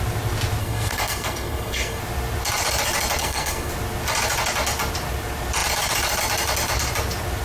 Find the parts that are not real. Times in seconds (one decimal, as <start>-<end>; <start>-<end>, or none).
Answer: 0.6-2.0; 3.2-3.7